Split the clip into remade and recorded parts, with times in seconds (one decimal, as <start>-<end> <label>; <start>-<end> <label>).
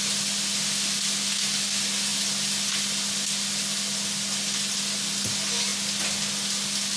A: 0.0-7.0 recorded